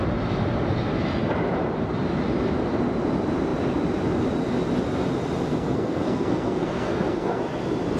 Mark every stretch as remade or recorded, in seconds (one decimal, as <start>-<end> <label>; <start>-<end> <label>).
0.0-5.5 recorded; 5.5-7.4 remade; 7.4-8.0 recorded